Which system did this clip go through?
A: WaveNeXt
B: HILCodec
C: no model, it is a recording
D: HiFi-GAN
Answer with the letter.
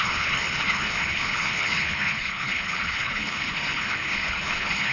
B